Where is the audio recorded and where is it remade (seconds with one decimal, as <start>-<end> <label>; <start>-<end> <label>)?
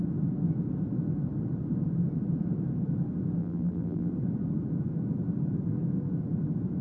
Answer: 0.0-3.4 recorded; 3.4-4.1 remade; 4.1-6.8 recorded